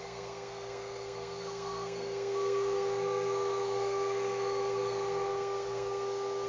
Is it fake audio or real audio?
fake